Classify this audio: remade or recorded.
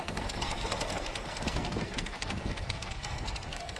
remade